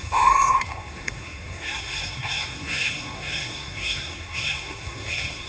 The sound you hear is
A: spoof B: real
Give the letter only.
A